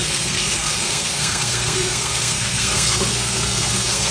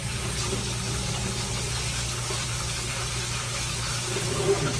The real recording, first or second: second